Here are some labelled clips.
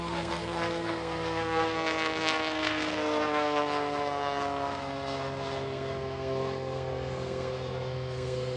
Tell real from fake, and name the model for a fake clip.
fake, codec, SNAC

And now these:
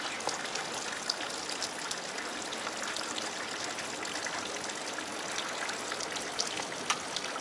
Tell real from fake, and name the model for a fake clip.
real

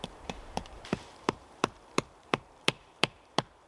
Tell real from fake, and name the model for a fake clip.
fake, vocoder, BigVGAN v2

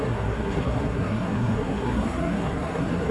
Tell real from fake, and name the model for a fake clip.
fake, codec, SNAC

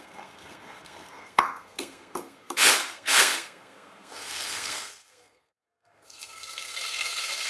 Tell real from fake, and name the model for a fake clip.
fake, codec, SNAC